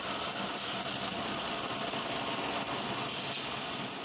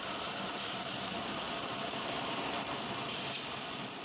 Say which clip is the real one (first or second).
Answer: first